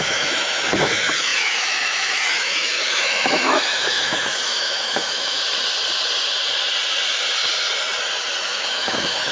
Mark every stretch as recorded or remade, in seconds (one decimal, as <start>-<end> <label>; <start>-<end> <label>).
0.0-5.4 remade; 5.4-8.4 recorded; 8.4-9.3 remade

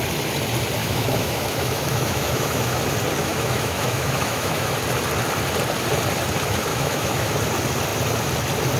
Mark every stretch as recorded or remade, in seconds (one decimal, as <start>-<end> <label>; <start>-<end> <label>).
0.0-0.8 recorded; 0.8-2.8 remade; 2.8-3.2 recorded; 3.2-4.7 remade; 4.7-6.7 recorded; 6.7-7.3 remade; 7.3-8.8 recorded